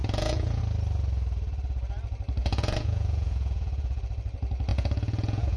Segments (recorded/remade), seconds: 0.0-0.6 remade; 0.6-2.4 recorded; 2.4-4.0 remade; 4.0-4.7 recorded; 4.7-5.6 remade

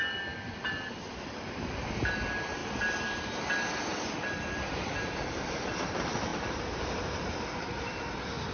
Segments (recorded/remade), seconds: 0.0-3.9 recorded; 3.9-4.7 remade; 4.7-6.3 recorded; 6.3-7.8 remade; 7.8-8.5 recorded

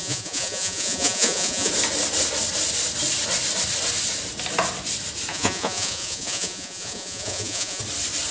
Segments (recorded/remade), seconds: 0.0-1.7 remade; 1.7-5.3 recorded; 5.3-7.8 remade; 7.8-8.3 recorded